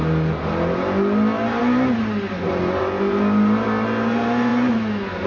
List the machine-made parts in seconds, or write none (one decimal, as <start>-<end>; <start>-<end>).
none